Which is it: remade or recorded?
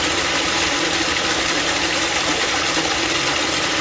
recorded